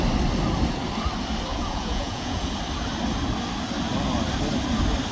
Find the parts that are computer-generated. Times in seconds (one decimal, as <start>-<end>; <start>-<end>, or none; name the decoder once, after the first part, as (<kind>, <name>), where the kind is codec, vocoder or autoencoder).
1.5-2.5 (vocoder, Vocos)